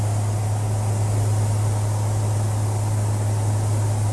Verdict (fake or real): real